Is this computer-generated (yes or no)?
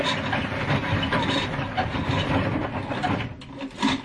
no